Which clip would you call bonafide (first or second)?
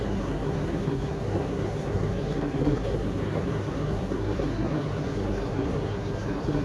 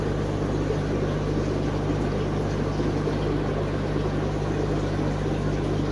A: second